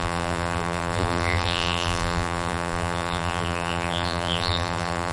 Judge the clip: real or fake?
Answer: fake